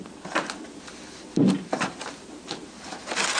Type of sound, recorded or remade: recorded